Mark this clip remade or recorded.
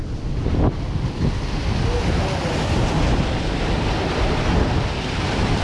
recorded